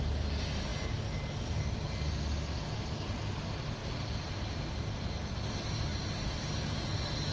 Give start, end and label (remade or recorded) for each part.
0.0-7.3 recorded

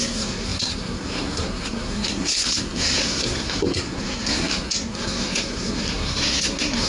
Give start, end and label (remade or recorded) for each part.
0.0-6.9 remade

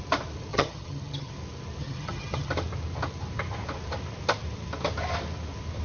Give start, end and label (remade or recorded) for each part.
0.0-0.5 recorded; 0.5-1.3 remade; 1.3-1.8 recorded; 1.8-2.5 remade; 2.5-5.8 recorded

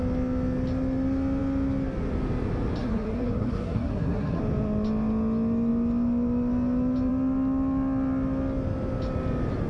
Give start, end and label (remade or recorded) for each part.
0.0-2.8 recorded; 2.8-4.4 remade; 4.4-9.7 recorded

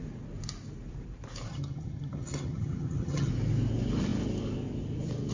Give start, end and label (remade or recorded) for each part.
0.0-1.5 recorded; 1.5-3.3 remade; 3.3-5.3 recorded

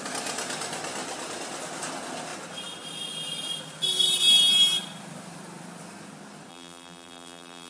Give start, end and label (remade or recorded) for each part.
0.0-6.5 recorded; 6.5-7.7 remade